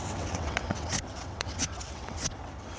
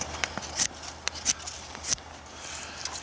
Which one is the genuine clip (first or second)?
second